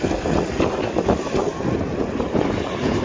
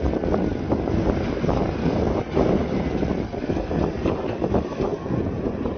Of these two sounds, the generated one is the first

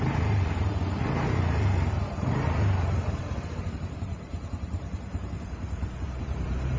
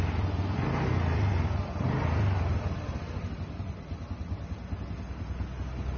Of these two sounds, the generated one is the first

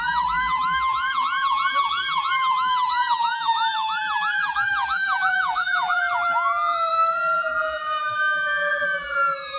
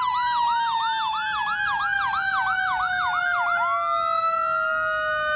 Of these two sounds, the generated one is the first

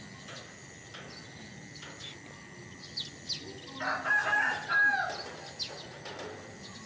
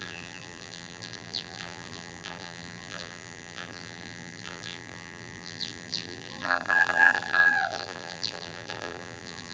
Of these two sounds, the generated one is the second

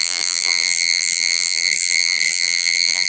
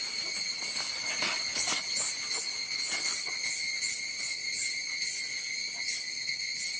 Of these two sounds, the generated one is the first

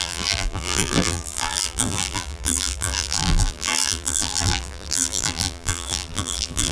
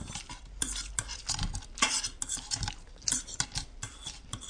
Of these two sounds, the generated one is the first